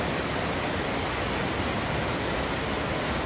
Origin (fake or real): real